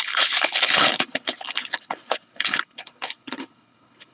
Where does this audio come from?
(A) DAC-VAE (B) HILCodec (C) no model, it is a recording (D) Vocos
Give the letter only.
B